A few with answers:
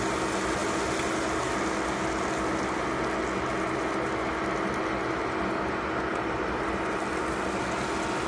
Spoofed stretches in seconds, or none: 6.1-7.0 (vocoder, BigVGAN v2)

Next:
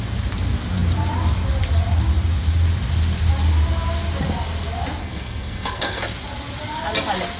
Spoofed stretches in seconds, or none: 5.0-6.0 (codec, SNAC)

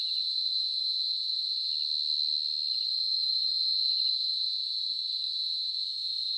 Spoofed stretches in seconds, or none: 0.0-1.7 (vocoder, BigVGAN v2); 2.7-6.4

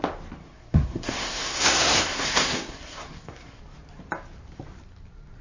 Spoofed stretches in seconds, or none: 0.4-3.6 (codec, SNAC)

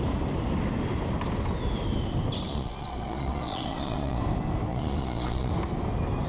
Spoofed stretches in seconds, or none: 2.5-4.2 (vocoder, Vocos); 4.7-5.5

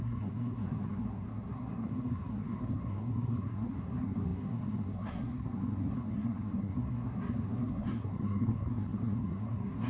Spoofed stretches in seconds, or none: 0.0-9.9 (codec, SNAC)

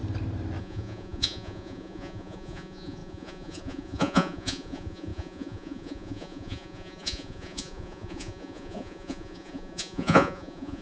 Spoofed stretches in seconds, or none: 0.6-10.8 (vocoder, Vocos)

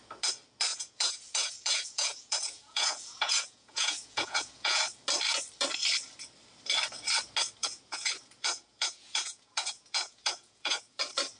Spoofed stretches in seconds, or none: 0.7-4.8 (vocoder, Vocos); 7.6-11.0